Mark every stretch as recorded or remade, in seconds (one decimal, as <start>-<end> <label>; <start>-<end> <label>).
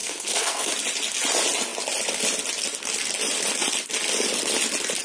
0.0-0.7 remade; 0.7-5.0 recorded